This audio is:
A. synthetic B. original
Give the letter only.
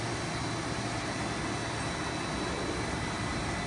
B